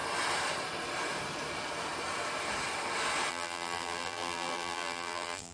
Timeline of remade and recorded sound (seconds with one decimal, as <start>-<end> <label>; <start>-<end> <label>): 0.0-3.3 recorded; 3.3-5.5 remade